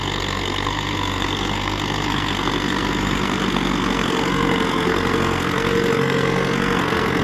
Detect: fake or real fake